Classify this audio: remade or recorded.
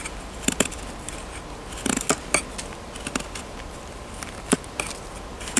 recorded